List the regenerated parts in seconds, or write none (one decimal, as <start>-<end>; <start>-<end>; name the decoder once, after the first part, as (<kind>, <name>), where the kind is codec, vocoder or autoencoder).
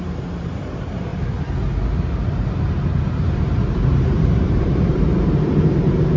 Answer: 0.0-1.1 (vocoder, BigVGAN v2); 2.7-6.2